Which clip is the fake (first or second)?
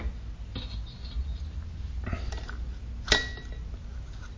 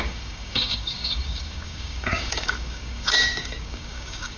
second